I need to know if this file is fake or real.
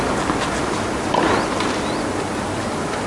real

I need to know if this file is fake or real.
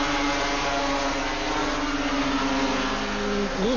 real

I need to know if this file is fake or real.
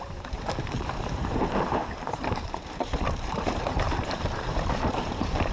fake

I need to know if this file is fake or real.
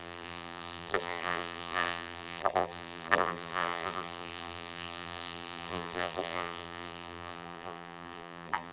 fake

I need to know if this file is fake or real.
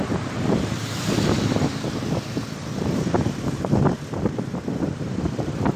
fake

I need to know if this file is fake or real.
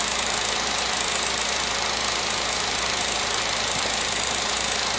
fake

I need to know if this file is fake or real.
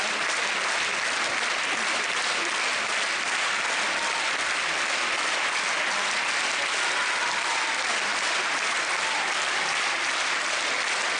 real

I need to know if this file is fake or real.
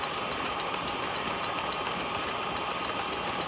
fake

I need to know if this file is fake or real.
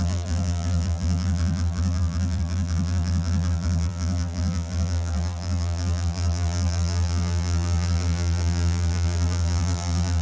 fake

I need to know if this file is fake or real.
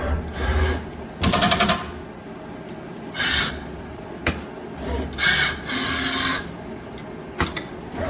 real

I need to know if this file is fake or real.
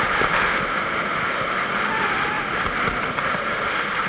real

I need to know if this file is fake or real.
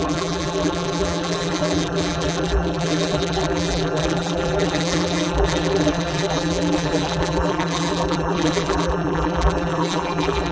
fake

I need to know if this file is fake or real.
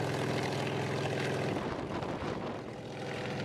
real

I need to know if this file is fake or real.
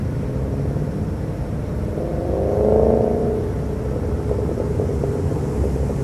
real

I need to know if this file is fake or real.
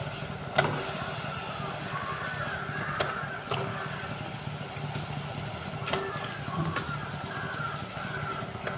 real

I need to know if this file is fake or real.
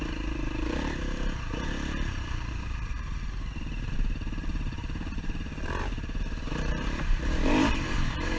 fake